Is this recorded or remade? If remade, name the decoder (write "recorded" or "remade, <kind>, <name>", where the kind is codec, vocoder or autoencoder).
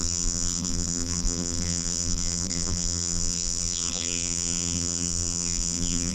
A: remade, vocoder, BigVGAN v2